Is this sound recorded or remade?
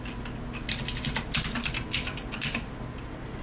recorded